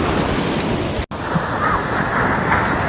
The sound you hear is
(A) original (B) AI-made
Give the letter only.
A